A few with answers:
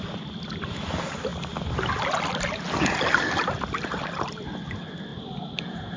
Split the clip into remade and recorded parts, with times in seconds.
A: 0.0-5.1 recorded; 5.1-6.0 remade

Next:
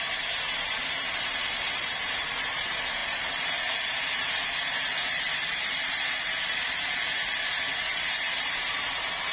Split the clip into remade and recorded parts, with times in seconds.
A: 0.0-9.3 remade

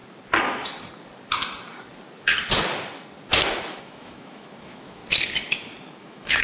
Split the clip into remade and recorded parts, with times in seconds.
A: 0.0-3.8 recorded; 3.8-5.0 remade; 5.0-5.8 recorded; 5.8-6.4 remade

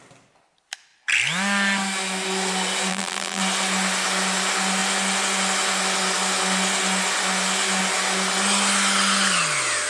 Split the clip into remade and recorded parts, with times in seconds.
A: 0.0-2.9 recorded; 2.9-3.4 remade; 3.4-9.9 recorded

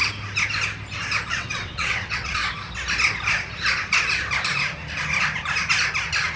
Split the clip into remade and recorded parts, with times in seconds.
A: 0.0-1.3 recorded; 1.3-2.4 remade; 2.4-6.4 recorded

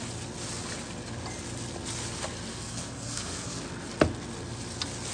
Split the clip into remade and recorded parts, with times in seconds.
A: 0.0-2.5 recorded; 2.5-3.6 remade; 3.6-5.1 recorded

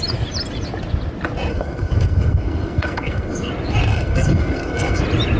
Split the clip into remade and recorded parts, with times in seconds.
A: 0.0-1.5 recorded; 1.5-3.5 remade; 3.5-3.9 recorded; 3.9-5.0 remade; 5.0-5.4 recorded

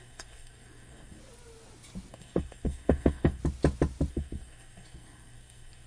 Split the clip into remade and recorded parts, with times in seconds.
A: 0.0-1.2 remade; 1.2-2.1 recorded; 2.1-3.4 remade; 3.4-4.1 recorded; 4.1-5.9 remade